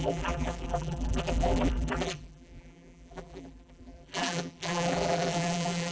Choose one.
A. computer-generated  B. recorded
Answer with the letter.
A